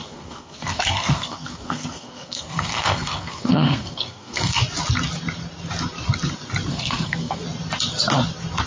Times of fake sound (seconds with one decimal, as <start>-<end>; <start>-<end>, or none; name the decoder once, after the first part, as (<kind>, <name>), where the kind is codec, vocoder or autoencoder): 0.0-4.6 (codec, SNAC); 6.7-7.4